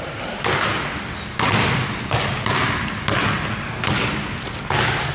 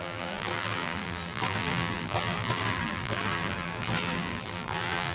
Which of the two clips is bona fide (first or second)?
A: first